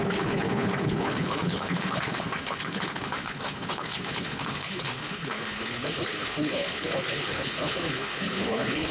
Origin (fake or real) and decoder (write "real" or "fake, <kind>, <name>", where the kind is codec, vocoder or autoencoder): fake, codec, HILCodec